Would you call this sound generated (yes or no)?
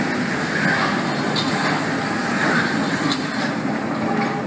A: no